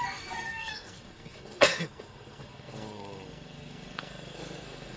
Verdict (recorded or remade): remade